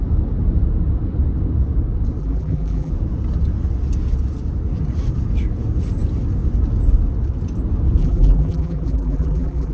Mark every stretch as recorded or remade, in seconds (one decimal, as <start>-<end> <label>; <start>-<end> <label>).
0.0-2.2 recorded; 2.2-2.9 remade; 2.9-8.0 recorded; 8.0-9.7 remade